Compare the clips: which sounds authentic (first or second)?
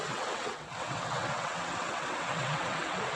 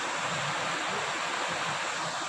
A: second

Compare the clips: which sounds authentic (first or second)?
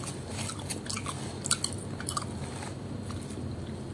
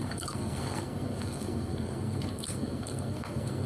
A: first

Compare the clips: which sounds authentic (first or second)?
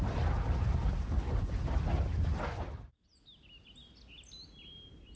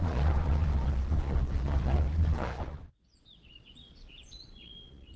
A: first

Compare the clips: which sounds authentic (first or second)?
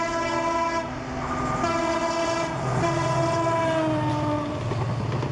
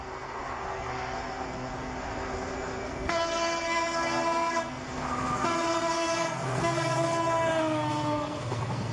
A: first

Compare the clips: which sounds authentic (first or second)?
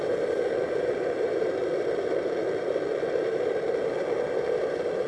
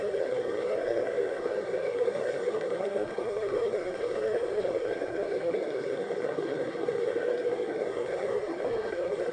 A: first